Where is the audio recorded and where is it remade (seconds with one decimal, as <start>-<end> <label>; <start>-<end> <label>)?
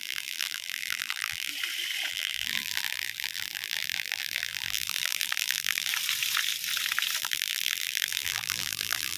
0.0-1.5 remade; 1.5-2.1 recorded; 2.1-5.9 remade; 5.9-7.2 recorded; 7.2-9.2 remade